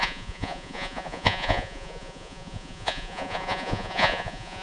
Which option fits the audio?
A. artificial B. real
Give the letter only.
A